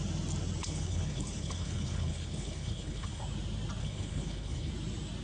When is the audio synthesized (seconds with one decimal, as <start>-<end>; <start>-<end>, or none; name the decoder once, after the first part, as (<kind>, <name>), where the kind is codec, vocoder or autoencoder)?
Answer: 0.6-3.2 (codec, HILCodec); 3.8-4.7